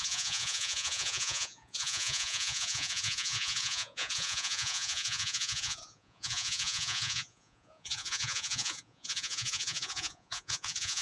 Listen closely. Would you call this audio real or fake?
fake